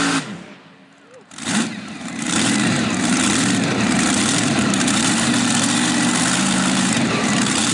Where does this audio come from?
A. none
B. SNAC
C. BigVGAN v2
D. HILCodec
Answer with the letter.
C